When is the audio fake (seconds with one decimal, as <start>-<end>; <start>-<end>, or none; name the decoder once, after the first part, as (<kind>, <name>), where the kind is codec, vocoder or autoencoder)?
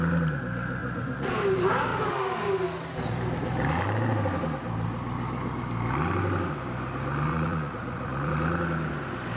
0.8-1.3 (vocoder, Vocos); 7.3-8.3